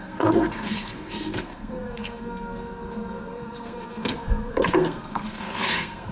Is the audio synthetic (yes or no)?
yes